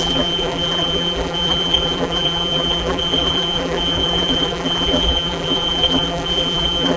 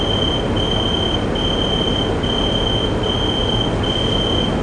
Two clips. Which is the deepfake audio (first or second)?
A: first